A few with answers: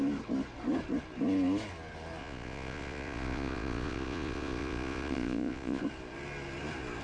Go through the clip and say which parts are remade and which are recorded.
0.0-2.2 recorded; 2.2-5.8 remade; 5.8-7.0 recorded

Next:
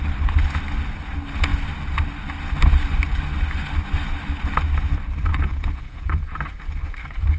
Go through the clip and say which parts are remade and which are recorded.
0.0-5.3 recorded; 5.3-6.4 remade; 6.4-7.4 recorded

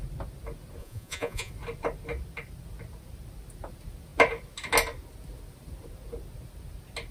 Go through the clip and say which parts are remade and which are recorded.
0.0-0.8 recorded; 0.8-1.5 remade; 1.5-7.1 recorded

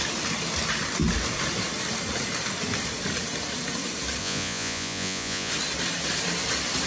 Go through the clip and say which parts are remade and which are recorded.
0.0-4.2 recorded; 4.2-5.5 remade; 5.5-6.9 recorded

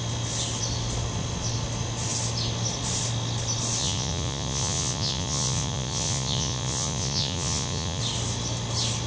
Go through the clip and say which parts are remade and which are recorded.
0.0-3.8 recorded; 3.8-8.0 remade; 8.0-9.1 recorded

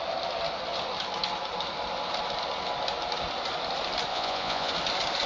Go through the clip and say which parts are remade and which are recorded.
0.0-4.1 recorded; 4.1-4.7 remade; 4.7-5.3 recorded

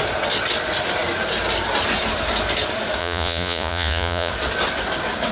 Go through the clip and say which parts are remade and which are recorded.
0.0-3.0 recorded; 3.0-4.3 remade; 4.3-5.3 recorded

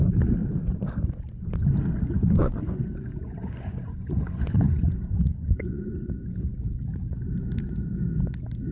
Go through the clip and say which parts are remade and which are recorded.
0.0-2.4 recorded; 2.4-5.9 remade; 5.9-8.7 recorded